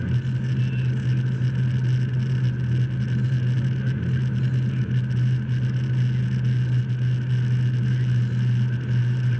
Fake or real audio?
real